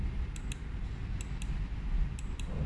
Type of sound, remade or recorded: recorded